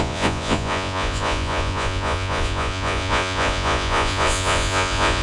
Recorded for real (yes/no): no